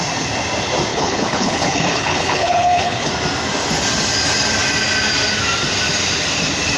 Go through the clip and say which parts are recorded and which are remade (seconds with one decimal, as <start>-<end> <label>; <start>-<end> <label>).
0.0-0.9 recorded; 0.9-3.1 remade; 3.1-6.8 recorded